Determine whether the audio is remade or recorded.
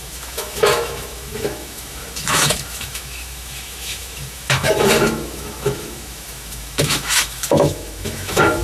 remade